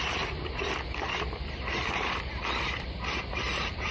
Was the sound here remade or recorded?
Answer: recorded